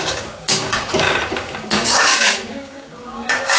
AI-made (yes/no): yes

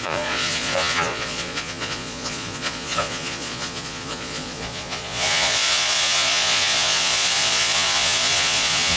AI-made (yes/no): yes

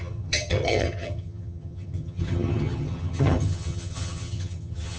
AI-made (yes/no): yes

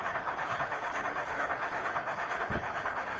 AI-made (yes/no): yes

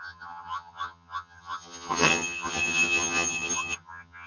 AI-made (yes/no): yes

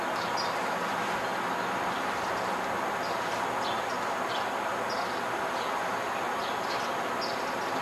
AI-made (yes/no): no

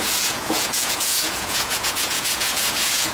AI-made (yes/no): yes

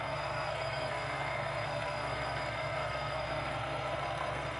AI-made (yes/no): yes